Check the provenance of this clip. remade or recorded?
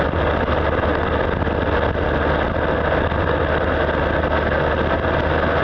recorded